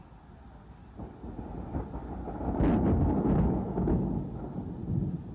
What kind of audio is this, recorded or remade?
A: recorded